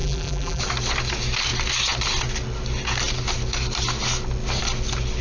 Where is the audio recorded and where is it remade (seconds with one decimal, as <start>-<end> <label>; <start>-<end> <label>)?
0.0-0.6 remade; 0.6-5.2 recorded